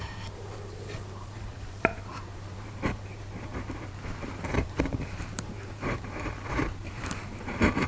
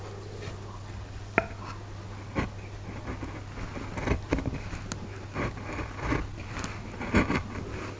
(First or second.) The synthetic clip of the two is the first